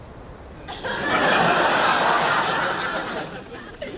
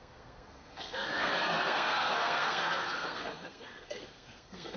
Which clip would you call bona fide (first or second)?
first